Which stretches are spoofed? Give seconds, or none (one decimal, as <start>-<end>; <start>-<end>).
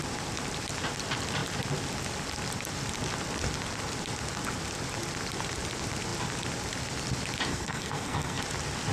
7.5-8.4